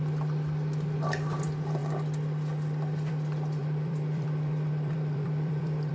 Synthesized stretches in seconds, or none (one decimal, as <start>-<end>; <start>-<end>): 3.6-5.9